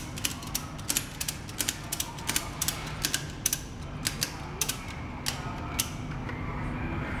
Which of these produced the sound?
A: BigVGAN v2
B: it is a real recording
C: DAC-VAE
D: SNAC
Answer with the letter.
B